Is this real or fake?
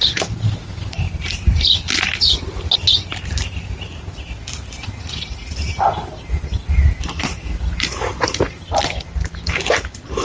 real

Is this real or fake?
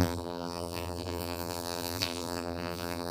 fake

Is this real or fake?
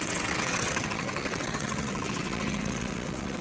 fake